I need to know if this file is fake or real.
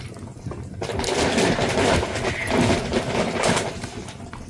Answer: real